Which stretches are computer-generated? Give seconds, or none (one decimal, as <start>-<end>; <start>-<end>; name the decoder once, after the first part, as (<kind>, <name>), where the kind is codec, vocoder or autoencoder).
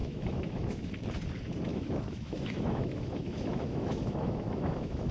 0.0-0.9 (autoencoder, DAC-VAE); 1.7-5.1